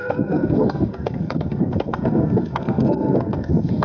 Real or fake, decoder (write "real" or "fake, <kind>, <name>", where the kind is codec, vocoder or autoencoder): fake, codec, SNAC